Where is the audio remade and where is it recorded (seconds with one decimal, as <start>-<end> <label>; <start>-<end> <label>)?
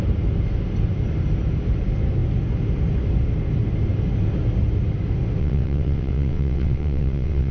0.0-5.4 recorded; 5.4-7.5 remade